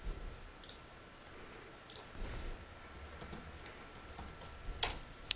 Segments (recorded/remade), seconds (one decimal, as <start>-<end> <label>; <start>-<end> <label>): 0.0-5.4 recorded

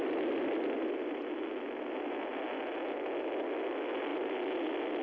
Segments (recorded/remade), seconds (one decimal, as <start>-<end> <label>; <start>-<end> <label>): 0.0-5.0 recorded

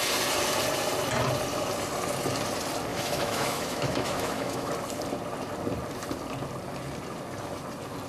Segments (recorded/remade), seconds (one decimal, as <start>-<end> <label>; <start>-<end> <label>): 0.0-2.9 recorded; 2.9-4.7 remade; 4.7-8.1 recorded

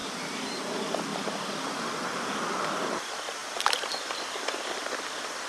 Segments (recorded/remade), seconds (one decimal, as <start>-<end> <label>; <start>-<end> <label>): 0.0-1.1 recorded; 1.1-1.9 remade; 1.9-5.5 recorded

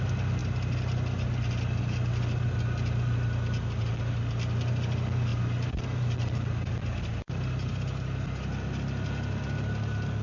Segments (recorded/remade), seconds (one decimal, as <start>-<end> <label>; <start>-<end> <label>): 0.0-10.2 recorded

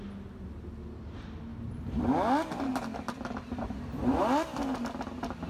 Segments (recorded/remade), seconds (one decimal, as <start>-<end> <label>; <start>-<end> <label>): 0.0-5.5 recorded